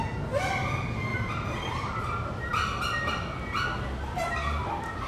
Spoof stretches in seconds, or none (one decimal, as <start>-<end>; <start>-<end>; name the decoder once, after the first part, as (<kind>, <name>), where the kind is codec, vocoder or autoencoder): 1.1-1.9 (vocoder, BigVGAN v2)